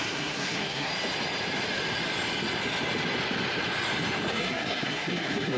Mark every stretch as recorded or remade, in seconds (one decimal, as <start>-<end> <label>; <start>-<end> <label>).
0.0-0.9 remade; 0.9-4.3 recorded; 4.3-5.6 remade